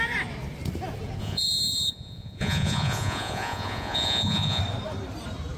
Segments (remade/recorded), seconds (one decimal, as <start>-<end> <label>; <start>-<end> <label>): 0.0-1.2 recorded; 1.2-4.6 remade; 4.6-5.6 recorded